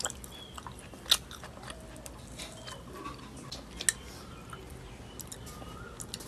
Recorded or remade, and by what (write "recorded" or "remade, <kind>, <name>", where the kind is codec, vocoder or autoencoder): recorded